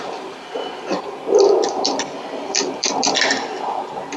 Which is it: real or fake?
real